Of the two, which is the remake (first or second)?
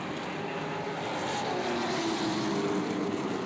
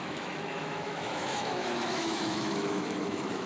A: second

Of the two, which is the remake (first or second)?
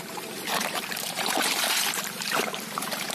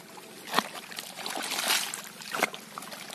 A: first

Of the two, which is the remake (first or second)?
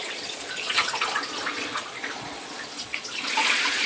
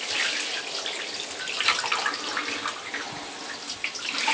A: first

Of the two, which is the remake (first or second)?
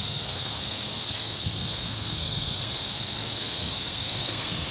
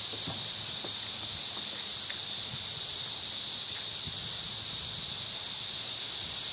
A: first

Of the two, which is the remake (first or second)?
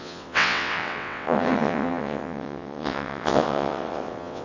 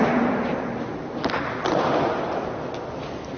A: first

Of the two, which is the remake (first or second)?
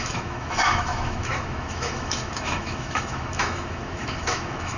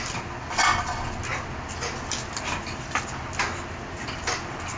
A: first